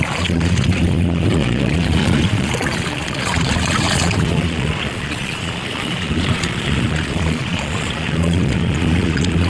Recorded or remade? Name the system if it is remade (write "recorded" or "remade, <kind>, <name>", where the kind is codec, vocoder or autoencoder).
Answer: remade, vocoder, Vocos